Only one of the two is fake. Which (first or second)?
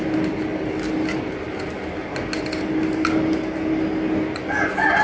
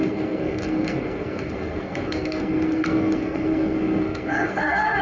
second